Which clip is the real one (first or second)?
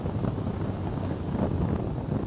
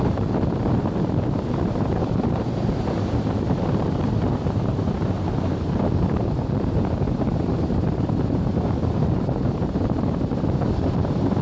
first